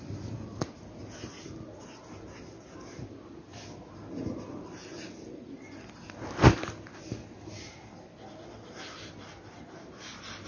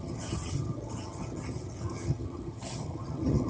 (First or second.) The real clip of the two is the first